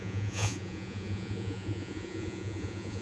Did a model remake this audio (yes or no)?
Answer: yes